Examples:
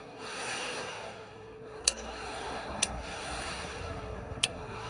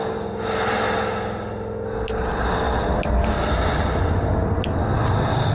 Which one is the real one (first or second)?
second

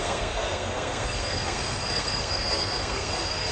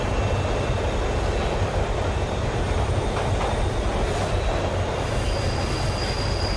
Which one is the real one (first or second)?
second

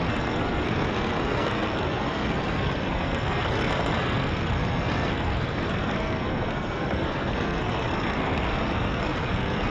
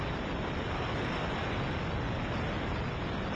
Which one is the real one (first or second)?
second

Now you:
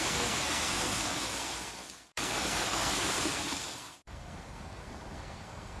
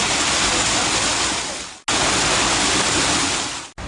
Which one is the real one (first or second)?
second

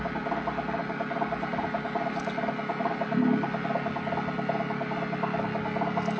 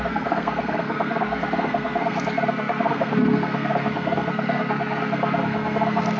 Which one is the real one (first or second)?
first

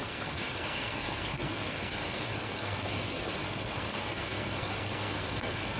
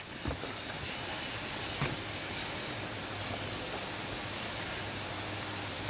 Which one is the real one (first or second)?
second